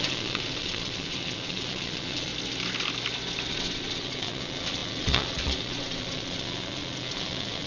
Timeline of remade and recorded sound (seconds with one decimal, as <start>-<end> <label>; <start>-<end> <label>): 0.0-2.3 remade; 2.3-3.5 recorded; 3.5-7.7 remade